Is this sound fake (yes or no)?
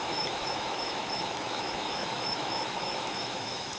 yes